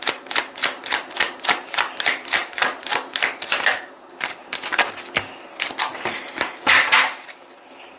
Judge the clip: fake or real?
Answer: real